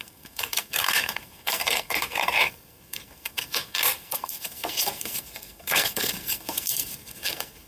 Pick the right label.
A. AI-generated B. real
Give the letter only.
A